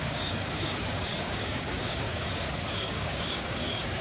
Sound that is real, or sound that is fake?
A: fake